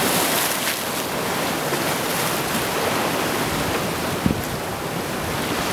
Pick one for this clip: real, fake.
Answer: real